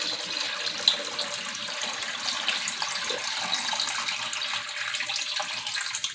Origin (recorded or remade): recorded